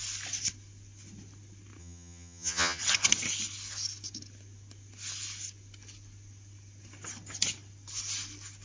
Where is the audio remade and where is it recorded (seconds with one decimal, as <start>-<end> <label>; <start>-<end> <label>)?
0.0-1.8 recorded; 1.8-2.8 remade; 2.8-8.6 recorded

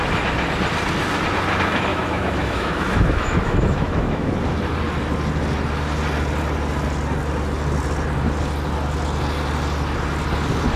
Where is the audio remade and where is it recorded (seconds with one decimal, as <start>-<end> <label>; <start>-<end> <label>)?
0.0-1.9 recorded; 1.9-4.3 remade; 4.3-10.8 recorded

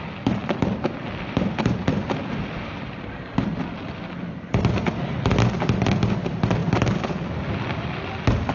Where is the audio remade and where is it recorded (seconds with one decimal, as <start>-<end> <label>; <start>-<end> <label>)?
0.0-8.5 recorded

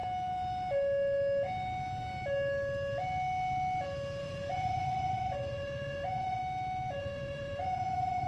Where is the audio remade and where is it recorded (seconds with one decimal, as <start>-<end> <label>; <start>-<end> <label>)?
0.0-4.2 recorded; 4.2-6.4 remade; 6.4-7.0 recorded; 7.0-8.3 remade